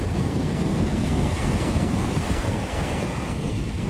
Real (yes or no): no